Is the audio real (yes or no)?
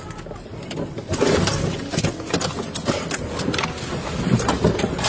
yes